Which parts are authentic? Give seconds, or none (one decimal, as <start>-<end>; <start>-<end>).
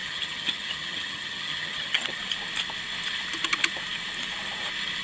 2.2-5.0